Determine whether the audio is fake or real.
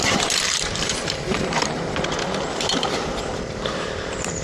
fake